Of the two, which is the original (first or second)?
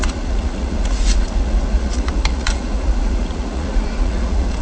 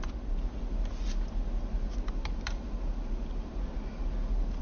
second